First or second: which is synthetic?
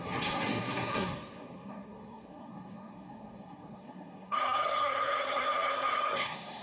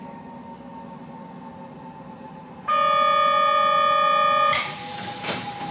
first